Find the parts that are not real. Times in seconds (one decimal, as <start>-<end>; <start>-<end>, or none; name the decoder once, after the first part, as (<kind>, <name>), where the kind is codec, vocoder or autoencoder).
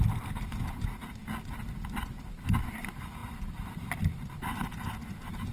none